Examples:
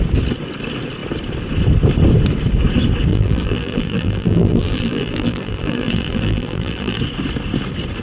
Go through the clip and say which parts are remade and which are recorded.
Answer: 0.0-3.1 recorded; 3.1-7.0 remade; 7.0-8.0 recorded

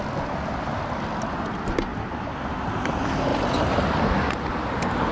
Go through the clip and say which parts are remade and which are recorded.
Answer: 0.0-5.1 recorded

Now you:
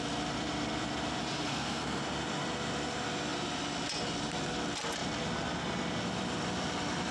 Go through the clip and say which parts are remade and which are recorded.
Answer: 0.0-1.4 recorded; 1.4-2.0 remade; 2.0-7.1 recorded

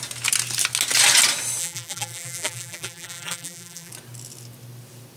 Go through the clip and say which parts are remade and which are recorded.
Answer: 0.0-1.6 recorded; 1.6-3.9 remade; 3.9-5.2 recorded

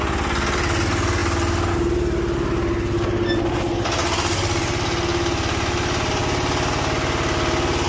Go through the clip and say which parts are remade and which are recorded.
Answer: 0.0-7.9 recorded